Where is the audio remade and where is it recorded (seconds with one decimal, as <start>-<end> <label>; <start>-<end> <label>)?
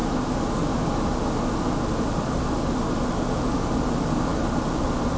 0.0-3.1 recorded; 3.1-5.2 remade